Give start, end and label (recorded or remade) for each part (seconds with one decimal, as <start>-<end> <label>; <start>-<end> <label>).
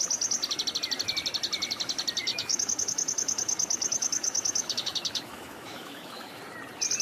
0.0-2.3 recorded; 2.3-6.4 remade; 6.4-7.0 recorded